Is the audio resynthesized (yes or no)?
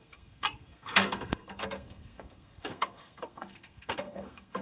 yes